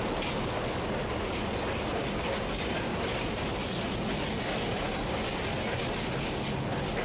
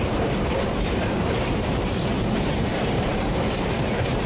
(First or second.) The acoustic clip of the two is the first